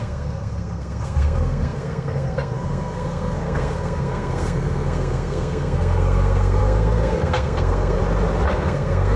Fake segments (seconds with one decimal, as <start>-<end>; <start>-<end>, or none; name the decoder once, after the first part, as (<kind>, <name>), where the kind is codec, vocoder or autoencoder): 0.0-8.0 (codec, SNAC); 8.5-9.2